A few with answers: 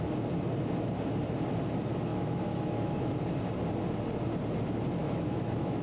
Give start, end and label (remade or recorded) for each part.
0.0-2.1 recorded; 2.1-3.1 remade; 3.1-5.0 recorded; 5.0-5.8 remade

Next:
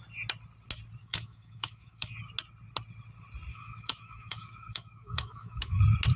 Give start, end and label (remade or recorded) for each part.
0.0-1.0 recorded; 1.0-2.1 remade; 2.1-3.5 recorded; 3.5-5.8 remade; 5.8-6.2 recorded

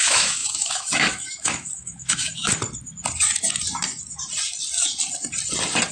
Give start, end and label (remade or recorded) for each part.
0.0-2.5 remade; 2.5-5.9 recorded

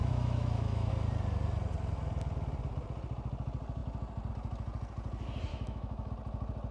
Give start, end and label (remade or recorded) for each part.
0.0-0.9 remade; 0.9-5.5 recorded; 5.5-6.1 remade; 6.1-6.7 recorded

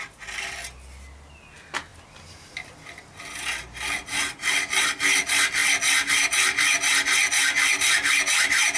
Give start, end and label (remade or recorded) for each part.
0.0-8.8 recorded

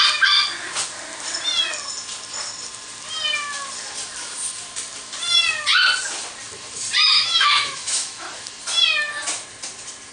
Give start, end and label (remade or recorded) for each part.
0.0-7.1 recorded; 7.1-8.3 remade; 8.3-10.1 recorded

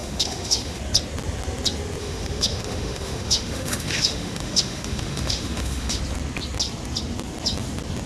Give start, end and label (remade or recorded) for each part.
0.0-0.8 remade; 0.8-2.0 recorded; 2.0-6.0 remade; 6.0-8.1 recorded